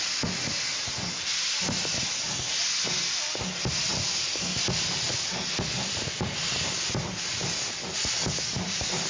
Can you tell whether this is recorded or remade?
recorded